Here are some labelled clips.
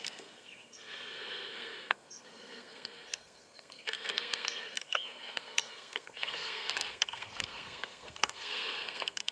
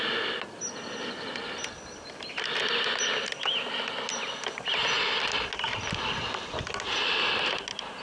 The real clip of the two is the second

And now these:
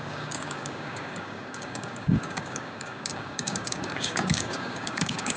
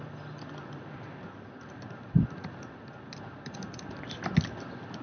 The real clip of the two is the second